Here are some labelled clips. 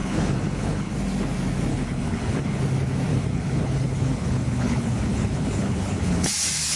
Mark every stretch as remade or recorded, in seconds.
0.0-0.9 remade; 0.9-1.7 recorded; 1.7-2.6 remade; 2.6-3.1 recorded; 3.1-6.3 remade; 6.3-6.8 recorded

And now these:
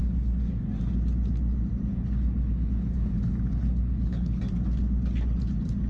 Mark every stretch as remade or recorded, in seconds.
0.0-0.7 remade; 0.7-1.9 recorded; 1.9-4.4 remade; 4.4-5.9 recorded

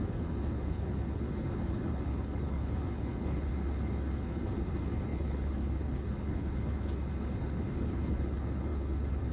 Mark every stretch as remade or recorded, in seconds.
0.0-9.3 remade